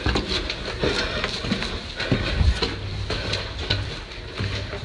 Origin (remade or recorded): recorded